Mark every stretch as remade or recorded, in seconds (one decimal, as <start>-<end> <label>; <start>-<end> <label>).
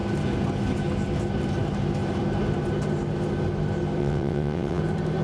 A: 0.0-4.0 recorded; 4.0-4.8 remade; 4.8-5.2 recorded